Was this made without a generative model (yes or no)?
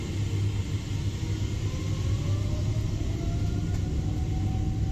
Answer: yes